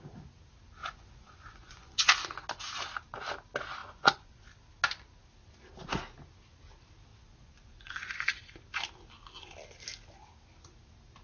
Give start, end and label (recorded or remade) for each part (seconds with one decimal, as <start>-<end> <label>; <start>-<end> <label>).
0.0-0.8 recorded; 0.8-2.1 remade; 2.1-3.8 recorded; 3.8-4.4 remade; 4.4-7.1 recorded; 7.1-8.4 remade; 8.4-11.2 recorded